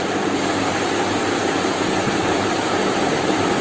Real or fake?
real